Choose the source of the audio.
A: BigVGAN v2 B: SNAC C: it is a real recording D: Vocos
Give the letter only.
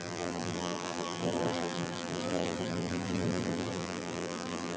A